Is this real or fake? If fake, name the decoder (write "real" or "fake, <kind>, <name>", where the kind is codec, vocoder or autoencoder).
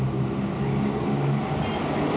real